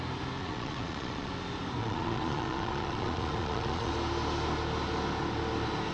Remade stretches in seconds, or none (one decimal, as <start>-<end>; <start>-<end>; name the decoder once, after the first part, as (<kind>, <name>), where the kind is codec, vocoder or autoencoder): 0.4-1.3 (vocoder, Vocos); 1.8-3.9